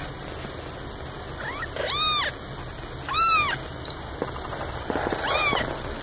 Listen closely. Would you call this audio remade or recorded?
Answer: recorded